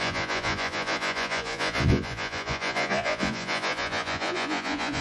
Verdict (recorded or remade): remade